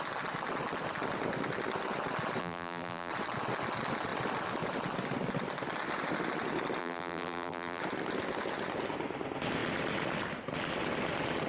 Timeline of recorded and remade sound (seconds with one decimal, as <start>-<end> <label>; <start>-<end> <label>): 0.0-2.4 recorded; 2.4-3.1 remade; 3.1-6.8 recorded; 6.8-7.8 remade; 7.8-11.5 recorded